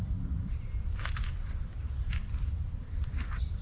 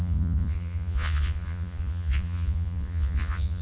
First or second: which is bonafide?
first